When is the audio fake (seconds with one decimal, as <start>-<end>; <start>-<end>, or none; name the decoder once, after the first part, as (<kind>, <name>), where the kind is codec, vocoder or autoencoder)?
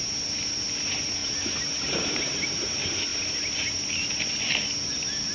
none